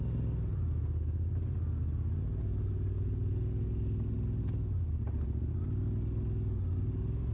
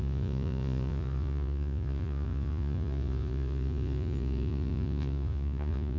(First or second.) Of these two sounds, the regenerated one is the second